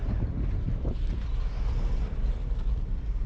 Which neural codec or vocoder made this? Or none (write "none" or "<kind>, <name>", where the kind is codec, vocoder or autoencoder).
vocoder, BigVGAN v2